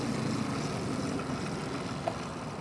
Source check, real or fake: real